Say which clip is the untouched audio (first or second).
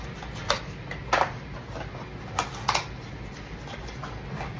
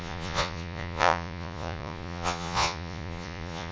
first